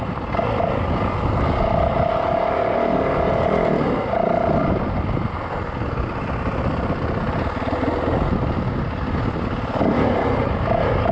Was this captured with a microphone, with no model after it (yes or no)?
yes